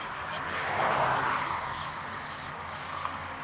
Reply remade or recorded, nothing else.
remade